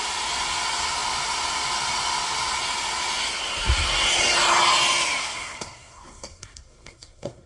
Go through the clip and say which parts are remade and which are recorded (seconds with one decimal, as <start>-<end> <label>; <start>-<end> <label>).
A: 0.0-5.2 recorded; 5.2-7.5 remade